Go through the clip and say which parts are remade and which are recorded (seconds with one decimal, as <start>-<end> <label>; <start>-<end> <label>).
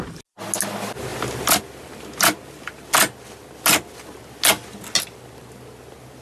0.0-6.2 recorded